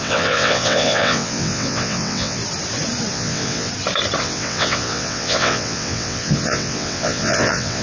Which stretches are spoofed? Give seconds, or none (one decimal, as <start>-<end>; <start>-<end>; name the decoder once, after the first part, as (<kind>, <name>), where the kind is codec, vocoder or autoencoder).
0.0-2.4 (vocoder, WaveNeXt); 3.1-3.7; 4.2-7.8